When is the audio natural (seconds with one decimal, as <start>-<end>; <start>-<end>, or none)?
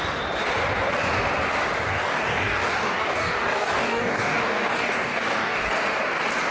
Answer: 0.0-1.9; 5.7-6.5